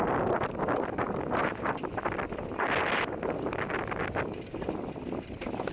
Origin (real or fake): real